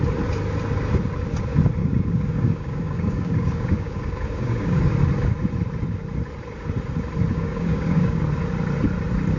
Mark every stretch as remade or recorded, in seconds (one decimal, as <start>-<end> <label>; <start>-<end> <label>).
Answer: 0.0-1.8 recorded; 1.8-4.9 remade; 4.9-7.3 recorded; 7.3-8.2 remade; 8.2-9.4 recorded